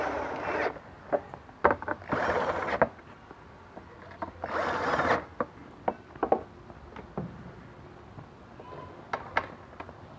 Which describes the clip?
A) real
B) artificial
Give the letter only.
A